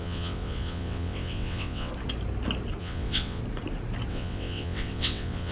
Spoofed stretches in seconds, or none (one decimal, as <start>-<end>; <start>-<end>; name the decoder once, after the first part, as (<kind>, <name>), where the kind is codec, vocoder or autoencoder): 0.0-1.9 (vocoder, WaveNeXt); 2.8-3.4; 4.1-5.5